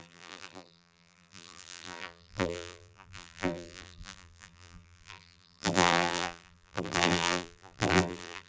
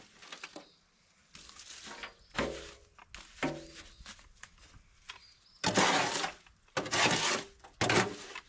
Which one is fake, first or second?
first